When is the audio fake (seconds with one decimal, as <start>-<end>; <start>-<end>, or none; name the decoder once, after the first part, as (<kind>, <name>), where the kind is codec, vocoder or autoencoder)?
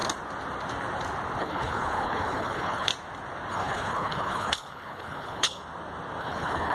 1.4-2.9 (codec, HILCodec); 3.5-5.6; 6.2-6.7